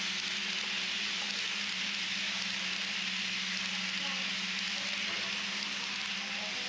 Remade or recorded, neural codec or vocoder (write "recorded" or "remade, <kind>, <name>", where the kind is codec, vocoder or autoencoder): recorded